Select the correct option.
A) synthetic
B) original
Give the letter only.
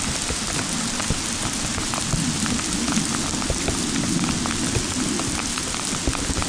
B